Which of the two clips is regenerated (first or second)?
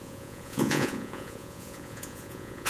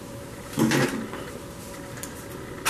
first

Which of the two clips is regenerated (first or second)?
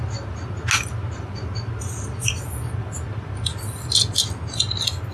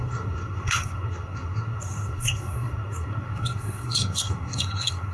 second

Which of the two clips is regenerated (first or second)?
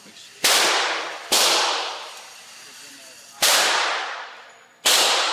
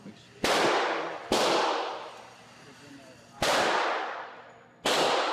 first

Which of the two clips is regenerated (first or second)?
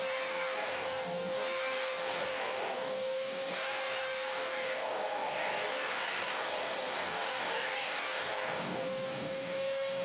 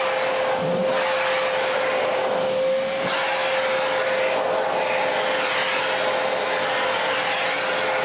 first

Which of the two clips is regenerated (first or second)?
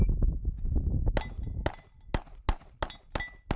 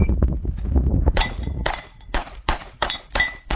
second